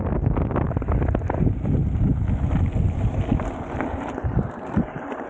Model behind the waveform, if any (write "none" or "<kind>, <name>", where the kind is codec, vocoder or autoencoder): none